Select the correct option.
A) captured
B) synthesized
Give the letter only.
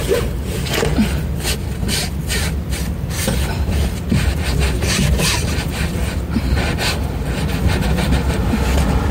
A